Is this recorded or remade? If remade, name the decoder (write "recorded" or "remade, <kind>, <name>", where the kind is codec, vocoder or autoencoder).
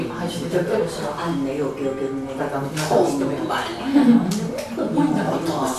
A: recorded